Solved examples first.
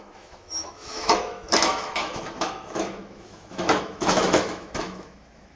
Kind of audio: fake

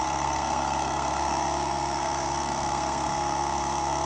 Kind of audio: fake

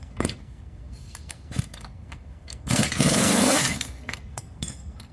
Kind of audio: fake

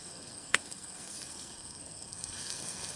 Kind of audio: fake